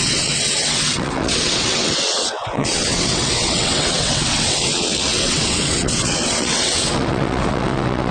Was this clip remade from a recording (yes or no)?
yes